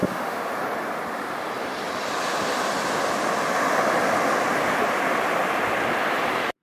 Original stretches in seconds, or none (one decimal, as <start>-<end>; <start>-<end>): 0.5-6.6